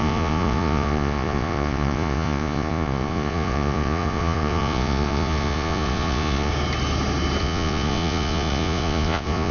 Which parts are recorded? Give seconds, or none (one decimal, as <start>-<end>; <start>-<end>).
6.5-7.4